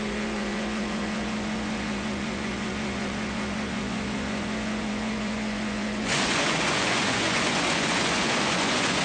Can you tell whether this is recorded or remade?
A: remade